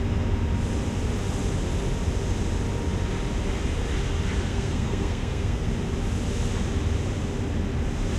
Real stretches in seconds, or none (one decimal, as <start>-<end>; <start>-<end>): 0.0-4.5; 5.7-8.2